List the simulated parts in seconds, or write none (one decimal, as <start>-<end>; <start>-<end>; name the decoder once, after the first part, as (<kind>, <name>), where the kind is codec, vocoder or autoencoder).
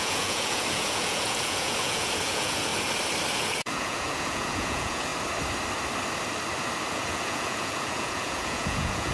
0.0-2.7 (vocoder, Vocos); 3.3-5.1; 6.9-9.1